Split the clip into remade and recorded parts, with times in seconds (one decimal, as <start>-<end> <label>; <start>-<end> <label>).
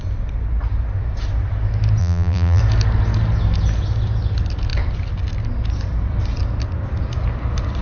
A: 0.0-2.0 recorded; 2.0-2.6 remade; 2.6-7.8 recorded